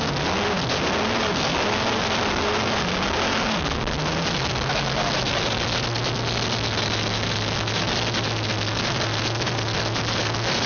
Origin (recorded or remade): recorded